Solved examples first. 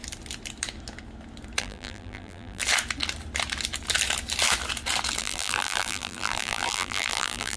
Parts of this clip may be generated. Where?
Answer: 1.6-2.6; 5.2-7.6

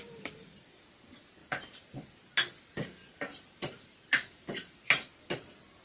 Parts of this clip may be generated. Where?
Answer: 1.4-2.1; 3.0-5.1

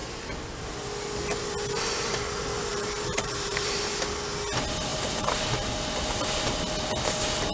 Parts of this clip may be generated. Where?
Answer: 2.7-3.8; 4.9-5.7

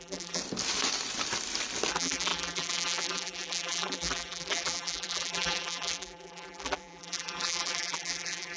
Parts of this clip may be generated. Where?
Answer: 0.0-0.4; 1.9-8.6

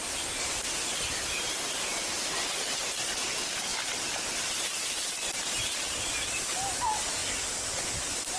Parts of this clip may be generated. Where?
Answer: none

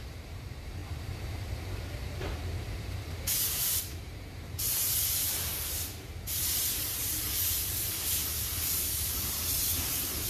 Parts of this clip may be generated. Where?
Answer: 0.0-10.3

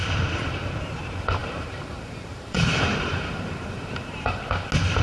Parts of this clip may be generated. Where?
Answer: 1.4-4.4